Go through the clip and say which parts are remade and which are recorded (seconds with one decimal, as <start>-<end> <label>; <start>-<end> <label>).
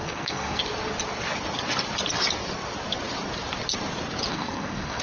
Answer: 0.0-0.6 remade; 0.6-4.3 recorded; 4.3-5.0 remade